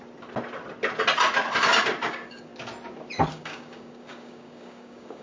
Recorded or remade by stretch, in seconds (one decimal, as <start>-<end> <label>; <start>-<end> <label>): 0.0-2.1 recorded; 2.1-2.5 remade; 2.5-3.3 recorded; 3.3-5.2 remade